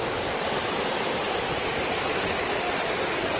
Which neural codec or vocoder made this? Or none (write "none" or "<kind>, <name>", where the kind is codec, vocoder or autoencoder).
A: none